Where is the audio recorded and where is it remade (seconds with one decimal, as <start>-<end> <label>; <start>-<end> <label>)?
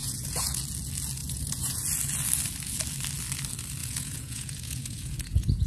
0.0-0.6 remade; 0.6-1.2 recorded; 1.2-1.8 remade; 1.8-3.8 recorded; 3.8-5.7 remade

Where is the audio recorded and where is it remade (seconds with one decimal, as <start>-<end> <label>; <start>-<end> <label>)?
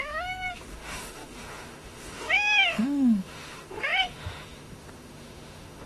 0.0-5.9 remade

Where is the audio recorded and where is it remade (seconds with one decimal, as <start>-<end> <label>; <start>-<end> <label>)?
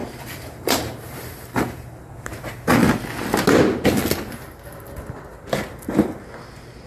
0.0-2.1 remade; 2.1-6.9 recorded